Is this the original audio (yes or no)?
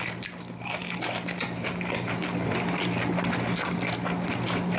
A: yes